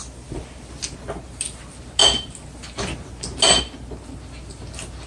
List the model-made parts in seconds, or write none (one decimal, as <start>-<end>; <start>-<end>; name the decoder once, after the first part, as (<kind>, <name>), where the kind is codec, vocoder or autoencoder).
none